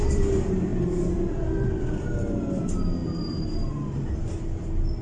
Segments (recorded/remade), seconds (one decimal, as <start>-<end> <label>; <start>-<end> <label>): 0.0-5.0 recorded